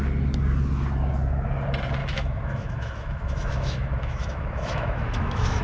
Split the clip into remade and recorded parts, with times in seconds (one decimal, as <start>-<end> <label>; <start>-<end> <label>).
0.0-2.0 recorded; 2.0-5.6 remade